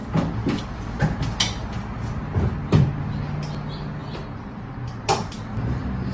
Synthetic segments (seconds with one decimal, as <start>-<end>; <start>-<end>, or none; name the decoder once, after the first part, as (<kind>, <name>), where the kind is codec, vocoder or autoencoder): 0.0-0.6 (vocoder, BigVGAN v2); 4.0-6.1